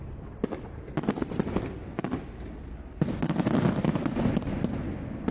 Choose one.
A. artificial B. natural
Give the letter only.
B